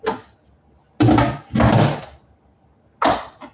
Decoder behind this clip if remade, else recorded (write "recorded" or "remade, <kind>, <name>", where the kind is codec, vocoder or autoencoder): recorded